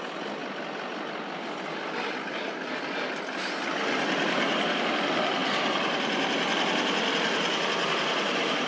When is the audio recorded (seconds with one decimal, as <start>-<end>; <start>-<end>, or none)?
0.0-8.7